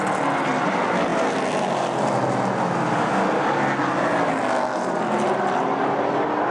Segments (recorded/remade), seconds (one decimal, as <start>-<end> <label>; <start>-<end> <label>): 0.0-6.5 recorded